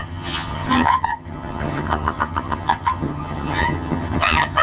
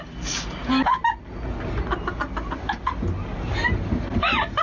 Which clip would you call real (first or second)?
second